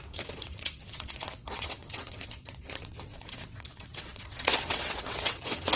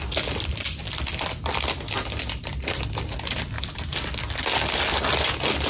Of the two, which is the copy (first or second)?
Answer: first